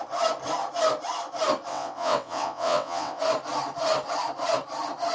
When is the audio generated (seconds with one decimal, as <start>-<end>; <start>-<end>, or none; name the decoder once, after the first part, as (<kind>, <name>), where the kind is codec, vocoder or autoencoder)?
1.7-3.2 (vocoder, WaveNeXt)